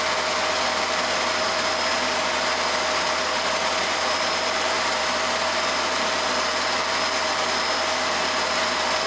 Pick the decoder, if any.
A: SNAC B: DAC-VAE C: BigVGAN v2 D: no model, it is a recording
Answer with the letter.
D